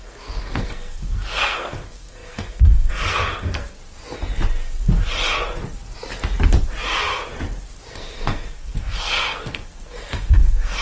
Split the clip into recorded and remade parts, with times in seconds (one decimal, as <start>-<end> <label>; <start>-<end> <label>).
0.0-3.8 remade; 3.8-7.9 recorded; 7.9-10.8 remade

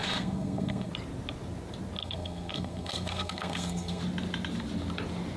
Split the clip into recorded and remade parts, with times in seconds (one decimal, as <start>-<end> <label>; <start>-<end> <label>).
0.0-0.9 remade; 0.9-2.0 recorded; 2.0-4.0 remade; 4.0-5.4 recorded

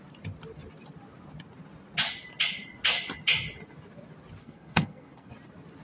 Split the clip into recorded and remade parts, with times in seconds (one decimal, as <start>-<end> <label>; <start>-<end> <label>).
0.0-4.4 recorded; 4.4-5.3 remade; 5.3-5.8 recorded

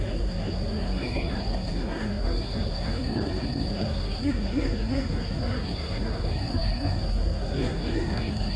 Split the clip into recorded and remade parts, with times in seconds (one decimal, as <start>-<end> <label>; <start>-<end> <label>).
0.0-8.6 remade